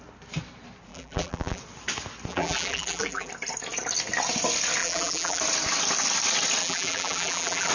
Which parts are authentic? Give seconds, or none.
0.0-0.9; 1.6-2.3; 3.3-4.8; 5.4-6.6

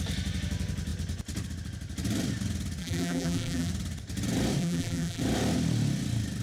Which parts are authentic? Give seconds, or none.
0.0-2.8; 3.7-4.6; 5.2-6.4

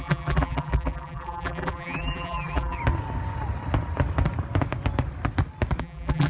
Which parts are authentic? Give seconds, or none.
2.8-5.8